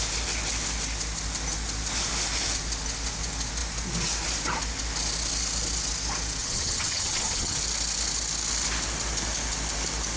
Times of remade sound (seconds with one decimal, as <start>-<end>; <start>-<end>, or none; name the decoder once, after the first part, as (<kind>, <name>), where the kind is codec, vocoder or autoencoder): 6.4-7.6 (vocoder, HiFi-GAN)